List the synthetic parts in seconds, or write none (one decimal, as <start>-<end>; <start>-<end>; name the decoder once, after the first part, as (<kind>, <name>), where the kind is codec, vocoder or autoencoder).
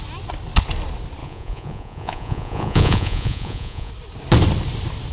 1.2-3.9 (vocoder, Vocos)